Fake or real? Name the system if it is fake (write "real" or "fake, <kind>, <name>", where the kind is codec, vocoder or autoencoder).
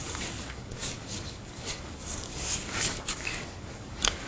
fake, codec, DAC